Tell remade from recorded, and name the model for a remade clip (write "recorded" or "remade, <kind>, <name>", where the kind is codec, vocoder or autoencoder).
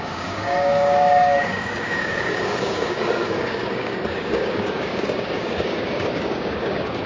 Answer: remade, codec, DAC